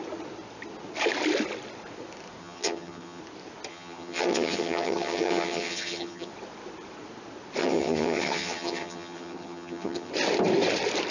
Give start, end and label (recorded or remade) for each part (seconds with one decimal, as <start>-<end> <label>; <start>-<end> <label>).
0.0-2.4 recorded; 2.4-3.2 remade; 3.2-3.7 recorded; 3.7-6.3 remade; 6.3-7.6 recorded; 7.6-10.1 remade; 10.1-11.1 recorded